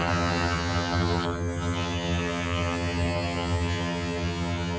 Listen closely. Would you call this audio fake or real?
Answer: fake